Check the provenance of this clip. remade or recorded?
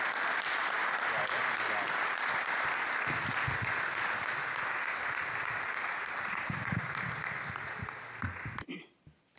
recorded